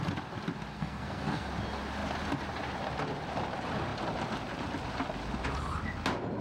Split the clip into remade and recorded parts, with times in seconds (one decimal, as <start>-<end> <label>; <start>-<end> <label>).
0.0-0.7 recorded; 0.7-1.5 remade; 1.5-6.4 recorded